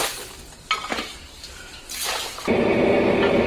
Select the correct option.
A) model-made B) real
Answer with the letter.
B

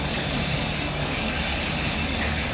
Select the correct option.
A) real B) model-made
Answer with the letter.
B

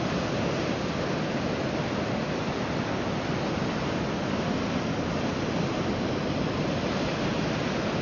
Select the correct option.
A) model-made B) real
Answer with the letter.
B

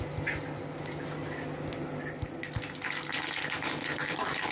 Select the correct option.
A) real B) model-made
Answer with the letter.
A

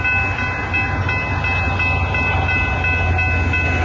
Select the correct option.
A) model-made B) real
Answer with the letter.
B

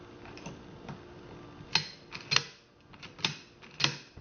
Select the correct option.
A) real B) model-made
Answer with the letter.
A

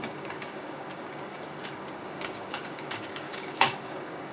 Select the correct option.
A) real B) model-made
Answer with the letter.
B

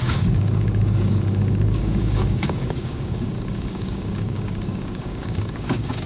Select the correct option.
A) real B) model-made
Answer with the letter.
B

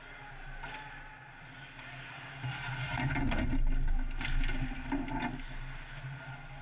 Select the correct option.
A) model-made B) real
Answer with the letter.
B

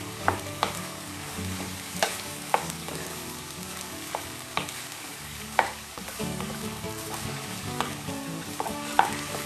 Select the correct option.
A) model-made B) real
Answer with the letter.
A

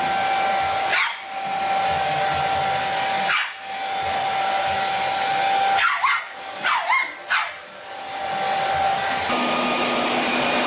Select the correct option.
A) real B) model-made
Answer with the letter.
A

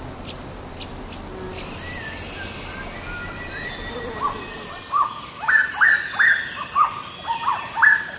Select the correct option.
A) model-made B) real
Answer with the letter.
B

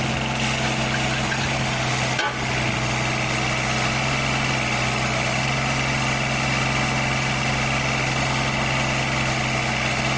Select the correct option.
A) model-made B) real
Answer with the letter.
B